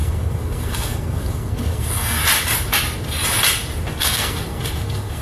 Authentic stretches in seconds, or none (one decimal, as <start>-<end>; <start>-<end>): 2.2-4.0